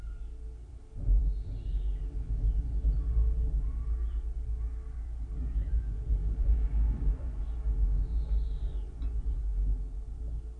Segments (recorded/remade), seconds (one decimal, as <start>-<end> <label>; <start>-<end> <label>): 0.0-5.4 recorded; 5.4-7.4 remade; 7.4-8.1 recorded; 8.1-9.4 remade; 9.4-10.6 recorded